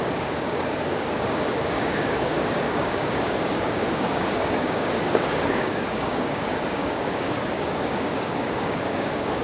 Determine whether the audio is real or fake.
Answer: fake